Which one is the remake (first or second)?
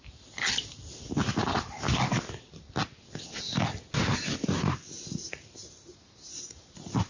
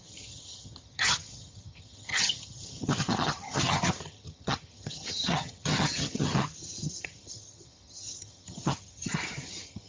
second